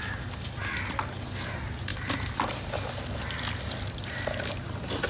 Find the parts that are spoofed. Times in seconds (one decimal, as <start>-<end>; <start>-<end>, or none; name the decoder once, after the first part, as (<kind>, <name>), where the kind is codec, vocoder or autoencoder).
none